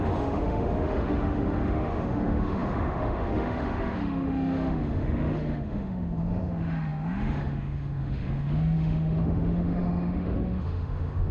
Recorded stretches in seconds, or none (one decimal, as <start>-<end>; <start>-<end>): none